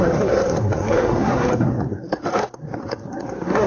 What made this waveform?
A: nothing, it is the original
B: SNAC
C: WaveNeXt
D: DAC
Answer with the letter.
B